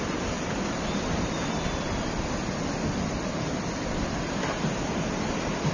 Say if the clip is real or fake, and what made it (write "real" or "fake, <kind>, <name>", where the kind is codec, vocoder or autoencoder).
real